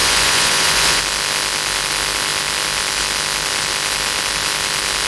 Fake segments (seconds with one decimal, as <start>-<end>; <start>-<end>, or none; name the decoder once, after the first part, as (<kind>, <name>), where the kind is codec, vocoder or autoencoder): 0.0-1.0 (vocoder, Vocos)